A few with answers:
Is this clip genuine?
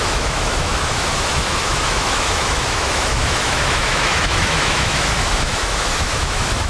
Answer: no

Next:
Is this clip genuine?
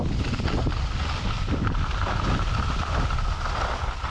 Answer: yes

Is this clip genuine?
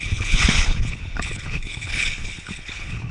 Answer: no